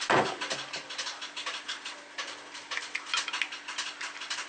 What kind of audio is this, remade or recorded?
recorded